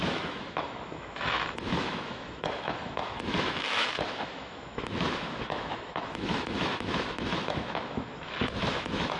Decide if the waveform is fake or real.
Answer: fake